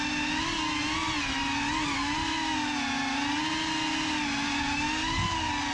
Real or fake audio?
real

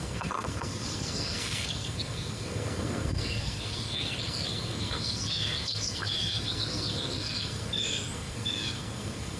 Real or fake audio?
fake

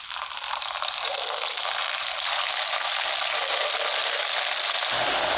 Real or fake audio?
real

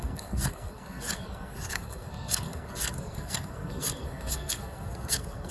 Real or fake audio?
fake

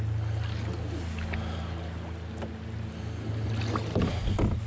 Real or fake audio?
real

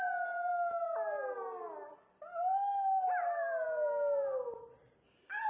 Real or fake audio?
real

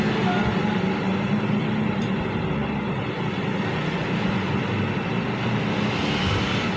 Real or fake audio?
real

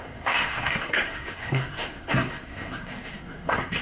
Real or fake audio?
fake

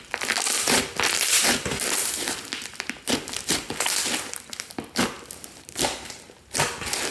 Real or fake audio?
real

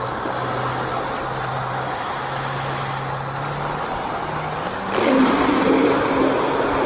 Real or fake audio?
real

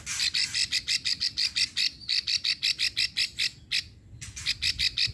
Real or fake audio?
real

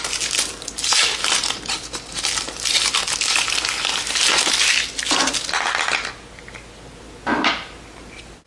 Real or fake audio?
real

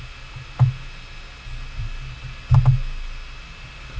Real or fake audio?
real